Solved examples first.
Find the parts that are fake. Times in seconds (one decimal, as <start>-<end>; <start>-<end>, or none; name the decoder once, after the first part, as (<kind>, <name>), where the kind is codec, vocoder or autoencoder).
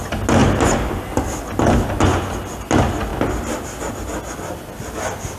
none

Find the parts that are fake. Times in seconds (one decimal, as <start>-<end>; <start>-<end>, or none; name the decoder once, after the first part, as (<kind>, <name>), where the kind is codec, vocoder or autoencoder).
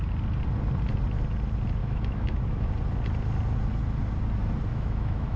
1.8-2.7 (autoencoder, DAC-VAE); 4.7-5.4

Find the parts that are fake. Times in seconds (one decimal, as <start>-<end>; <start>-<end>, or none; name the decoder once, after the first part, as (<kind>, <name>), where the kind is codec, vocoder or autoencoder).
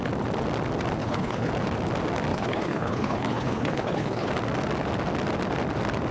1.0-1.5 (codec, HILCodec); 2.3-4.3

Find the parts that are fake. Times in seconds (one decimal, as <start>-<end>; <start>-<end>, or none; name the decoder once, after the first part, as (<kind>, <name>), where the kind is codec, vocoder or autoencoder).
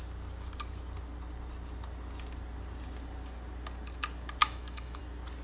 4.4-5.0 (autoencoder, DAC-VAE)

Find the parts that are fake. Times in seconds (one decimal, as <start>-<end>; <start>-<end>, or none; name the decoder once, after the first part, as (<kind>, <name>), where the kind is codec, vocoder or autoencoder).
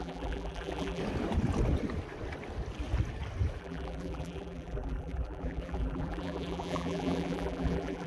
0.0-1.0 (vocoder, BigVGAN v2); 3.6-8.1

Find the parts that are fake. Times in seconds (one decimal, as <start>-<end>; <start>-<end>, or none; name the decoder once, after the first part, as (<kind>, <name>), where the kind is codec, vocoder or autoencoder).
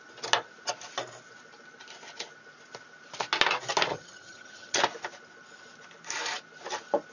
3.9-4.8 (vocoder, HiFi-GAN)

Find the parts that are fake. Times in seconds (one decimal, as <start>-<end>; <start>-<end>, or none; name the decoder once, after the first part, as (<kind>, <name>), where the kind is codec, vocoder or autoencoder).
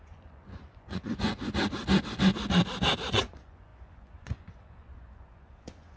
0.0-1.3 (vocoder, Vocos); 3.1-6.0